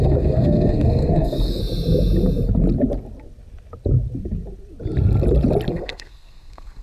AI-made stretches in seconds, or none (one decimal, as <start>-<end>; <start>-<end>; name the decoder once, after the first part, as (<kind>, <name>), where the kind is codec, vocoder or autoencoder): 0.0-1.6 (codec, SNAC); 5.7-6.8